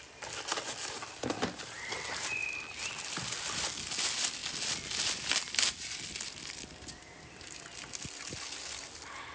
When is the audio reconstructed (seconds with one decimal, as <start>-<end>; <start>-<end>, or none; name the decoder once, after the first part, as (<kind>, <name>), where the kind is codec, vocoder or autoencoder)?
none